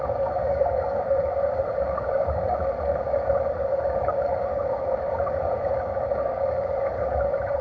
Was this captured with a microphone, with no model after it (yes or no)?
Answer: no